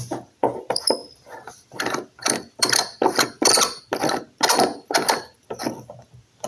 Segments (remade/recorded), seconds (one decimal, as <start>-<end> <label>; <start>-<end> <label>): 0.0-1.0 recorded; 1.0-3.8 remade; 3.8-6.5 recorded